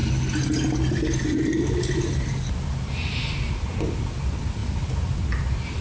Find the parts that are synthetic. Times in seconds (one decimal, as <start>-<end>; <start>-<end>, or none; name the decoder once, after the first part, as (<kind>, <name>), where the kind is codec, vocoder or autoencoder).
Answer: none